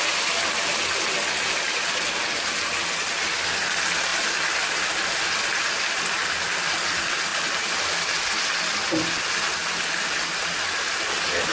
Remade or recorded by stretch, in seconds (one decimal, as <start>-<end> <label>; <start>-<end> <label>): 0.0-11.5 recorded